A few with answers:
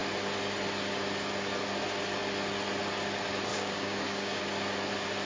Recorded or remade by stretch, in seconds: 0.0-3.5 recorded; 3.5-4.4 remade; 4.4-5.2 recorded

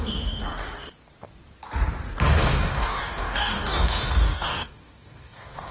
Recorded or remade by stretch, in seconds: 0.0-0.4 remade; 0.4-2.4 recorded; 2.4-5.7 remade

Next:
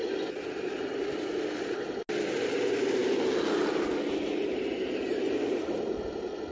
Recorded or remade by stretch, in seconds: 0.0-6.5 recorded